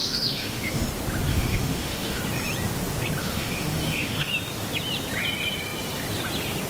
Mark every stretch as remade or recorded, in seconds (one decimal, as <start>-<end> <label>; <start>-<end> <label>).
0.0-0.8 remade; 0.8-1.3 recorded; 1.3-2.2 remade; 2.2-3.2 recorded; 3.2-4.3 remade; 4.3-6.7 recorded